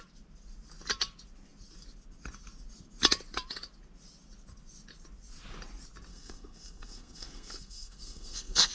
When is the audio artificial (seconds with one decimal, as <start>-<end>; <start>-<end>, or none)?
6.1-8.7